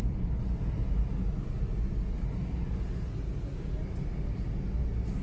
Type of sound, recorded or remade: recorded